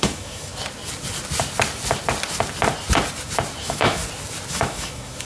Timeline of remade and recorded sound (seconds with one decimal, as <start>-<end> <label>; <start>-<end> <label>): 0.0-0.5 remade; 0.5-3.6 recorded; 3.6-4.0 remade; 4.0-4.5 recorded; 4.5-5.2 remade